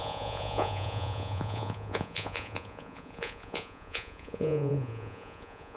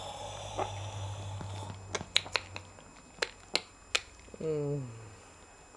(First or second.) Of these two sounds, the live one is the second